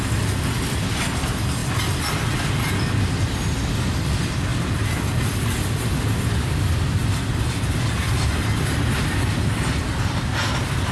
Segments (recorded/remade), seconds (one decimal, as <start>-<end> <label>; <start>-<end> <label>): 0.0-10.9 recorded